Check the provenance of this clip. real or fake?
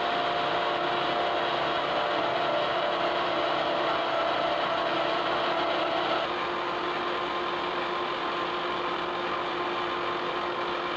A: real